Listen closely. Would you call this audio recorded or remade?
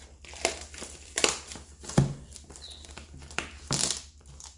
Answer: recorded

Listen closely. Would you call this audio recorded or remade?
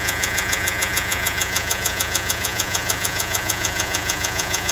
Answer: remade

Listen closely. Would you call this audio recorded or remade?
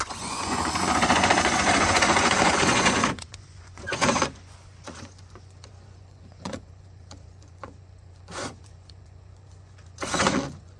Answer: remade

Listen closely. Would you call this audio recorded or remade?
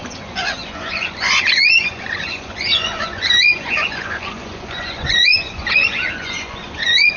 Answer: remade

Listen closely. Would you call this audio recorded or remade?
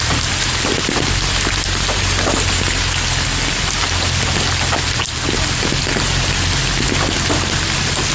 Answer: recorded